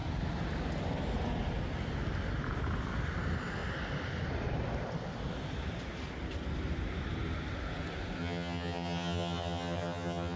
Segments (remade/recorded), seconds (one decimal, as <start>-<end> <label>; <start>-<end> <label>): 0.0-8.2 recorded; 8.2-10.4 remade